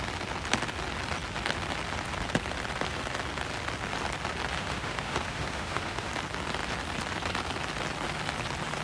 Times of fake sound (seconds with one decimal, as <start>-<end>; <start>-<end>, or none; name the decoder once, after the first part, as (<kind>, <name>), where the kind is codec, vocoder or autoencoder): 4.6-6.1 (autoencoder, DAC-VAE)